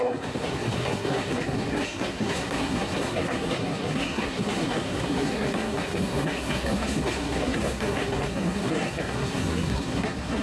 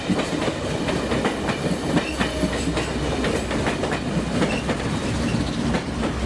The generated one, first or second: first